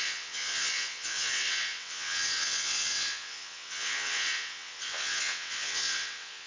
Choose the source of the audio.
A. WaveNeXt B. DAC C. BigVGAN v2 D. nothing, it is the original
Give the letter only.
A